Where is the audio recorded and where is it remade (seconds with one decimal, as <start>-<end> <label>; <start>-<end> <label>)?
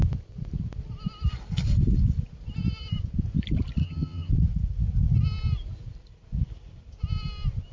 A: 0.0-3.8 recorded; 3.8-4.3 remade; 4.3-7.7 recorded